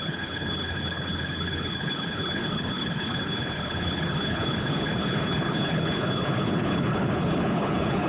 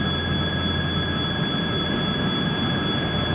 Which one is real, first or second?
second